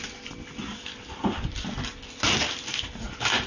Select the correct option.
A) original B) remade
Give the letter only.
A